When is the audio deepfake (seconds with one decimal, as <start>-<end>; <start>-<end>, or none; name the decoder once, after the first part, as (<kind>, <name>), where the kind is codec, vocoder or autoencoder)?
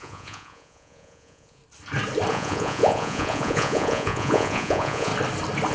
0.0-1.6 (vocoder, Vocos); 2.3-5.1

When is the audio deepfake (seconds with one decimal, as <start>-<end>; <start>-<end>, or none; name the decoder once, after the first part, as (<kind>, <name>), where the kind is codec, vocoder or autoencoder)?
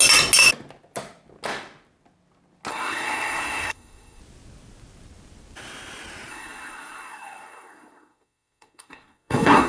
2.7-4.2 (codec, SNAC); 6.3-9.7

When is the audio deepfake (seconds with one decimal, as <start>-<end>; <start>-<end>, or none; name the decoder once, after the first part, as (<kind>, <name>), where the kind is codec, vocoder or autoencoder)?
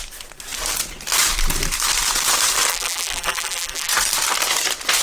2.7-3.9 (vocoder, BigVGAN v2)